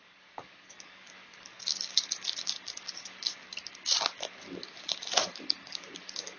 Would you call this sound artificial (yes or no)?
yes